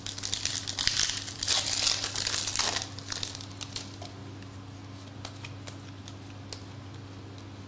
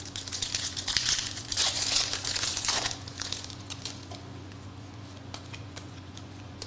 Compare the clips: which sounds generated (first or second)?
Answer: second